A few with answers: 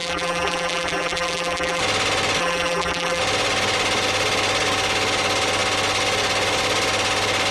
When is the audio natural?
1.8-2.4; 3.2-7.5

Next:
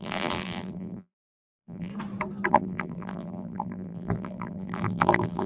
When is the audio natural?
1.9-2.5

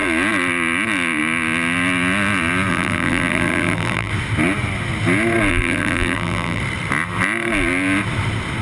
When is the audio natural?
0.0-2.7; 4.1-5.5; 6.6-8.6

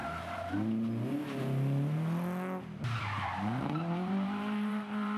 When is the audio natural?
0.0-3.0

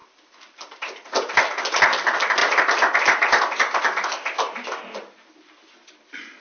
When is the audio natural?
1.4-2.4; 3.8-6.4

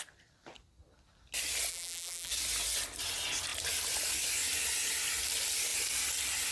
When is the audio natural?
0.0-1.7; 2.3-6.5

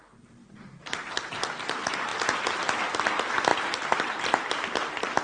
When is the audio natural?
0.0-0.4; 1.1-2.1; 2.7-3.5